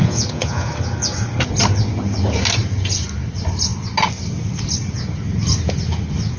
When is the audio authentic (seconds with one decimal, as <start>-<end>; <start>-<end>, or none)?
0.7-6.4

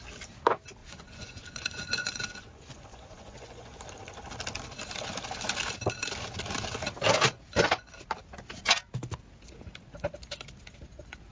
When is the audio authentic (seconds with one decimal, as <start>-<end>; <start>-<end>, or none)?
0.0-0.8; 3.8-11.3

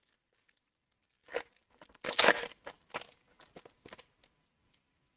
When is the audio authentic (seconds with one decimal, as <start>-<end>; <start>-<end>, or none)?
0.0-5.2

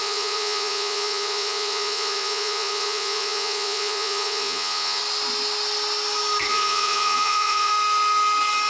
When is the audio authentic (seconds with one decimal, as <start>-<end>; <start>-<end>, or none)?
5.0-6.5; 7.7-8.7